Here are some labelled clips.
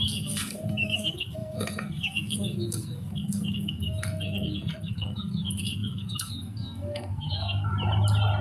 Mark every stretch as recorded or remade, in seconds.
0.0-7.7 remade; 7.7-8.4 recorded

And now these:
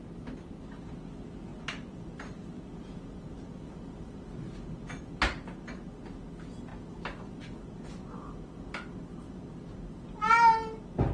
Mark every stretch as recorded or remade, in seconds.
0.0-11.1 recorded

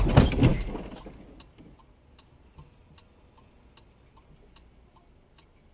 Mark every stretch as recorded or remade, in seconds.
0.0-5.7 recorded

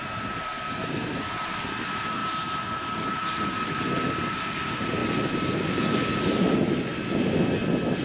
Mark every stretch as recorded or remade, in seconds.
0.0-6.9 remade; 6.9-7.5 recorded; 7.5-8.0 remade